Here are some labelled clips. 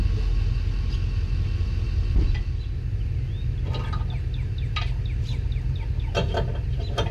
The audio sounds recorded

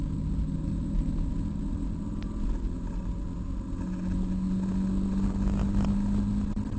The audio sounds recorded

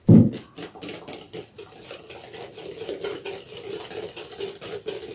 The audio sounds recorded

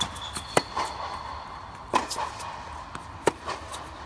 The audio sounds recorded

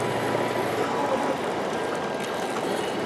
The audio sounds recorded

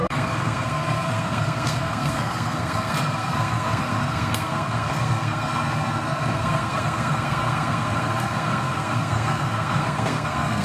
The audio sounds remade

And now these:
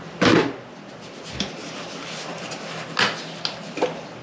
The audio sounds recorded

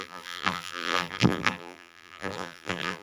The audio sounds remade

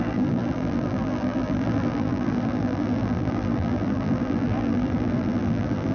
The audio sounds remade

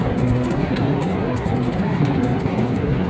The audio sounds remade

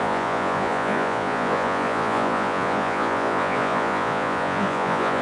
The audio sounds remade